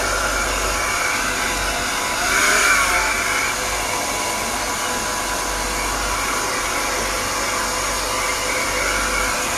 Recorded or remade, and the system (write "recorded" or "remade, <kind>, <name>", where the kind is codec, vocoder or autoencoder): recorded